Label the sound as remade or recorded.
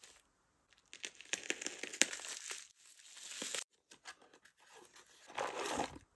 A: recorded